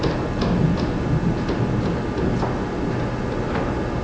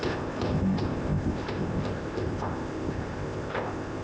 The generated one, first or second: second